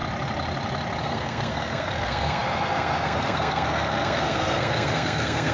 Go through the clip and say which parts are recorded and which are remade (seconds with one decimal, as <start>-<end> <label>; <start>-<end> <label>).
0.0-1.0 recorded; 1.0-5.5 remade